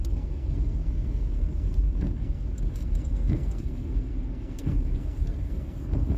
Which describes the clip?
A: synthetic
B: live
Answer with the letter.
A